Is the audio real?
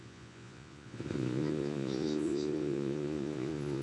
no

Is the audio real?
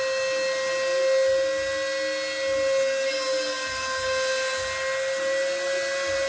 yes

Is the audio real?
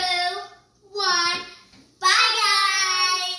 no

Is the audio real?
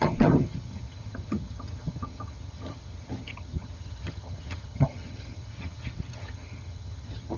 no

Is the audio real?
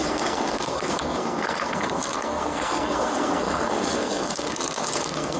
no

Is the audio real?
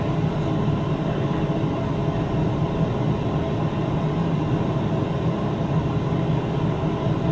yes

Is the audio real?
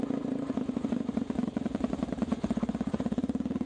no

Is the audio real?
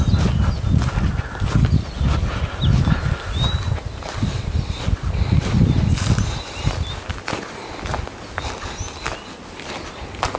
yes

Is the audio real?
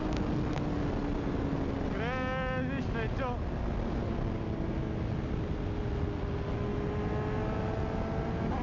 yes